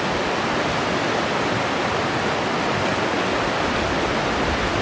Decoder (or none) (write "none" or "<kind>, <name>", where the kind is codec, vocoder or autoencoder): none